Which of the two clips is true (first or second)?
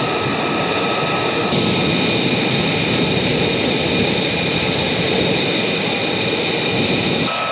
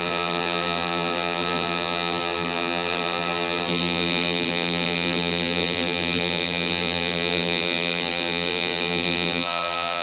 first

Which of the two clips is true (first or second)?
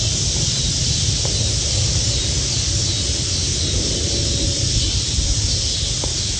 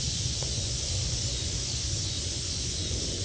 first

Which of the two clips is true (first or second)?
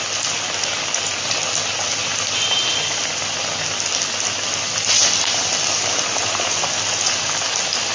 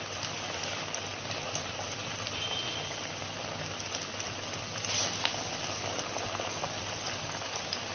first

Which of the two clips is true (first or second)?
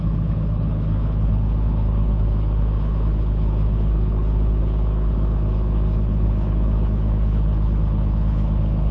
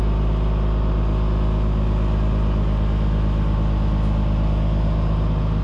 second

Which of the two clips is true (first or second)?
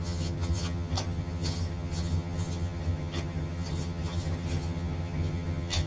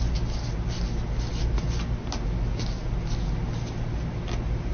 second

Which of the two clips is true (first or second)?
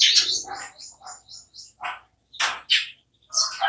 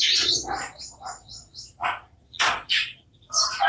first